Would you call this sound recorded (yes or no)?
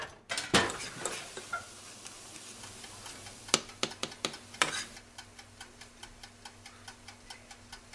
yes